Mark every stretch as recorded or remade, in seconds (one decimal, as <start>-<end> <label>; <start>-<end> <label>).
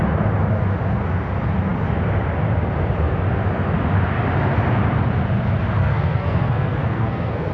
0.0-5.8 recorded; 5.8-7.5 remade